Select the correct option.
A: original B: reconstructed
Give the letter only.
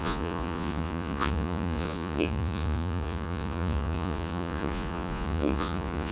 B